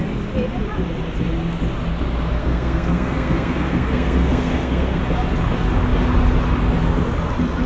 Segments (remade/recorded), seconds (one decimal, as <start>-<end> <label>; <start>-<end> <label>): 0.0-2.4 recorded; 2.4-5.0 remade; 5.0-7.7 recorded